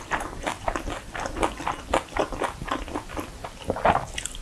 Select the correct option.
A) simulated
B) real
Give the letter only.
B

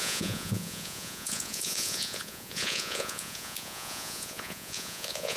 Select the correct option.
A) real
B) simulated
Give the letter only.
B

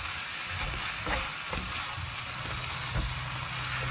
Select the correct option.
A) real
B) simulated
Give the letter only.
A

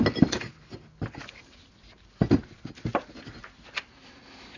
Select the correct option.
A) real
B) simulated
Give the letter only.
A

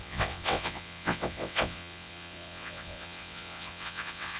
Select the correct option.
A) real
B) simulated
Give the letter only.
B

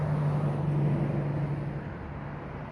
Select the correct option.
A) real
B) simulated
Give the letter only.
A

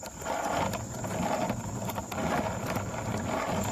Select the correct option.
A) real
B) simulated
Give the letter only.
A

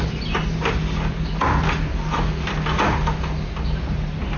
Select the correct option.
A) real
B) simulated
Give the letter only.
A